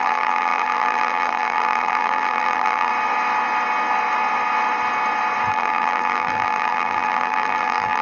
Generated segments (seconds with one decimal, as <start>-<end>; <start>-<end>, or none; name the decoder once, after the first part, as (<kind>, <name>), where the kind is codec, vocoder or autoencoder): 0.0-2.9 (vocoder, BigVGAN v2); 5.5-8.0